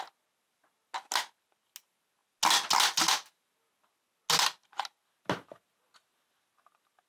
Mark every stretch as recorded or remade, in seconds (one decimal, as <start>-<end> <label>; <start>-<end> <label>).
0.0-7.1 recorded